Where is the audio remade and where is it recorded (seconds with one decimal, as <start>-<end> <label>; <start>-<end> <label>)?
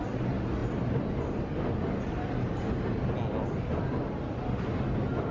0.0-5.3 recorded